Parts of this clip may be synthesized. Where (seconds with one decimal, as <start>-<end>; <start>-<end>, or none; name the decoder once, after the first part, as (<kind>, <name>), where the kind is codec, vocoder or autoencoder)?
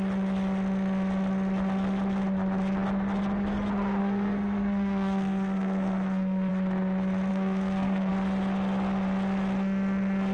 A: 4.0-6.5 (codec, SNAC); 7.3-8.1